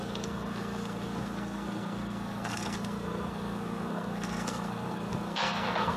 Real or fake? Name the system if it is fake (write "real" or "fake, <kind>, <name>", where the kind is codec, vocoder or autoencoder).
fake, codec, SNAC